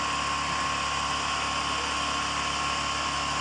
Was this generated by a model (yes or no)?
no